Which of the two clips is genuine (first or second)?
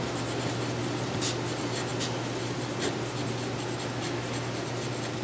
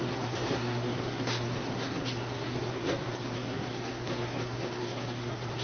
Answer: first